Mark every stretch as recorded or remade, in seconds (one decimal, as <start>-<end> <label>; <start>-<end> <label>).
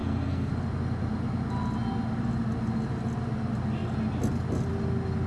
0.0-0.5 remade; 0.5-5.3 recorded